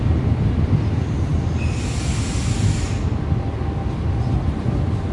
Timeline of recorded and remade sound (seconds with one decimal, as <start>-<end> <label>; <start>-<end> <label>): 0.0-5.1 recorded